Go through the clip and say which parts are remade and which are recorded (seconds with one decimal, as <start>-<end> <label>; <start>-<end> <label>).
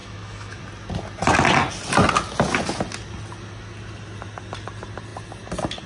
0.0-0.6 remade; 0.6-5.9 recorded